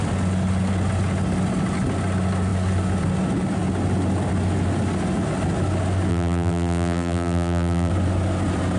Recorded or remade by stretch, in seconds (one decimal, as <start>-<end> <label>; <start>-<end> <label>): 0.0-6.1 recorded; 6.1-7.9 remade; 7.9-8.8 recorded